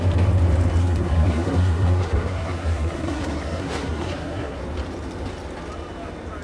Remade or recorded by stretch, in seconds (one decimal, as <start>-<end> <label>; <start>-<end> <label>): 0.0-0.8 recorded; 0.8-4.6 remade; 4.6-6.4 recorded